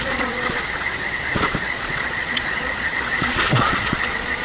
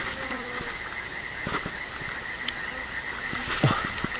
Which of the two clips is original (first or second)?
second